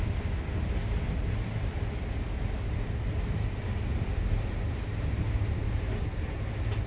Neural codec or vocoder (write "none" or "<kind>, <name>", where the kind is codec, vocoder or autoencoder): none